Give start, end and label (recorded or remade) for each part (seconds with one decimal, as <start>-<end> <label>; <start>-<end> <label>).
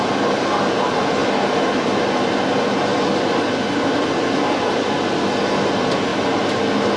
0.0-2.9 recorded; 2.9-5.6 remade; 5.6-6.1 recorded; 6.1-6.6 remade; 6.6-7.0 recorded